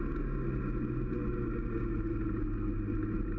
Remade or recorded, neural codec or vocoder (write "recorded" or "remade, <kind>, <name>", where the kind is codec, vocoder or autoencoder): recorded